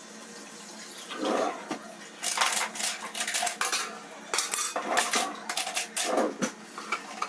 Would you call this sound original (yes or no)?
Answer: yes